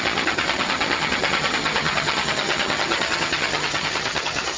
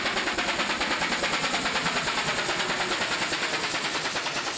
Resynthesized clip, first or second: first